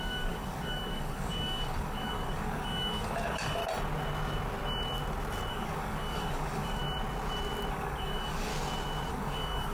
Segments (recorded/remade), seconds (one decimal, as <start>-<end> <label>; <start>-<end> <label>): 0.0-3.6 remade; 3.6-5.5 recorded; 5.5-6.8 remade; 6.8-7.7 recorded; 7.7-8.5 remade; 8.5-9.1 recorded; 9.1-9.7 remade